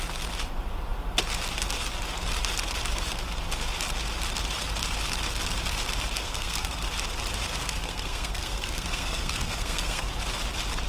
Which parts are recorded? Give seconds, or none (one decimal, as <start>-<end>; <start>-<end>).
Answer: 0.0-6.2; 6.8-7.6; 10.1-10.9